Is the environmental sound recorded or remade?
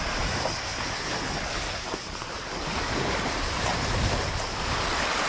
recorded